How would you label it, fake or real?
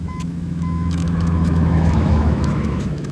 fake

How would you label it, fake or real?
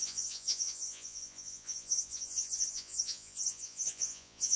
fake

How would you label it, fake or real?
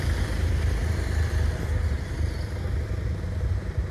fake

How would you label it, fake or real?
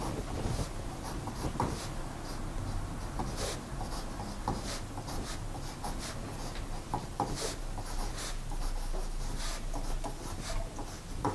real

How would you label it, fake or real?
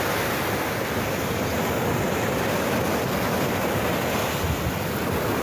real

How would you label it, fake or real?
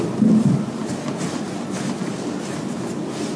real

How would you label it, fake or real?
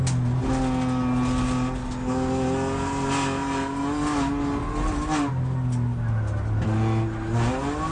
real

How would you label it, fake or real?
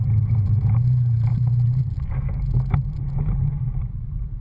fake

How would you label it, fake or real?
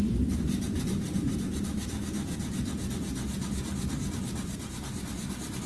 fake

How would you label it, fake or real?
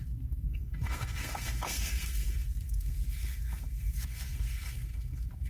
fake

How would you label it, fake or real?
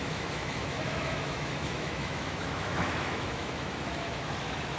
fake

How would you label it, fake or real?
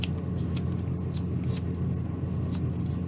real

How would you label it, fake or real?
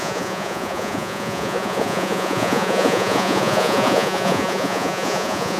fake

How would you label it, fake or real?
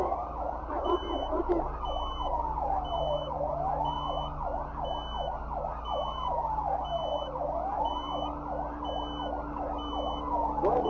real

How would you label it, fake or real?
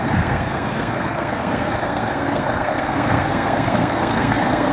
fake